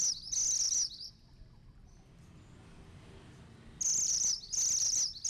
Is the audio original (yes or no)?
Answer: yes